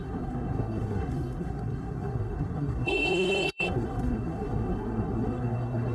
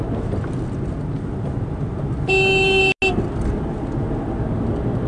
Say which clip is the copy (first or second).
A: first